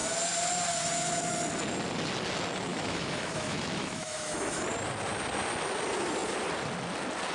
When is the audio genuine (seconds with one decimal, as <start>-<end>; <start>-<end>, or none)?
0.0-2.7; 4.6-7.3